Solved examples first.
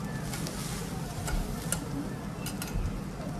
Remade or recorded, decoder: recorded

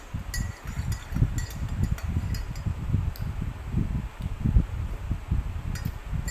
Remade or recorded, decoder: recorded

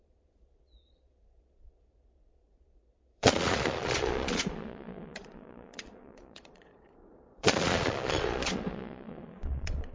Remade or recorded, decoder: remade, vocoder, Vocos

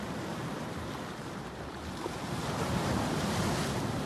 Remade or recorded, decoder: recorded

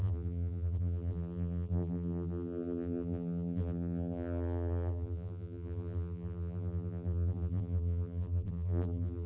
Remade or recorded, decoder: remade, vocoder, BigVGAN v2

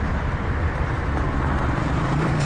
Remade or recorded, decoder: recorded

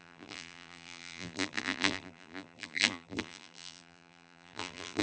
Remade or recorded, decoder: remade, vocoder, BigVGAN v2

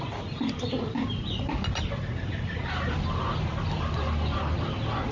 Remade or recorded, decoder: recorded